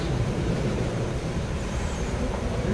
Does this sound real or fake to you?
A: fake